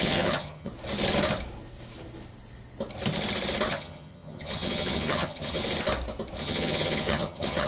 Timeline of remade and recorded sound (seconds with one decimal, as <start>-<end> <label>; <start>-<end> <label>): 0.0-0.7 remade; 0.7-3.7 recorded; 3.7-5.6 remade; 5.6-6.4 recorded; 6.4-7.7 remade